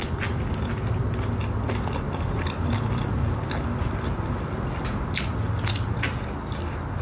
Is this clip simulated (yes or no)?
no